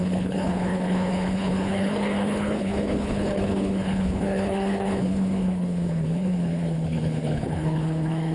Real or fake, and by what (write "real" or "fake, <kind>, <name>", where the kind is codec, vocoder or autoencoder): fake, codec, HILCodec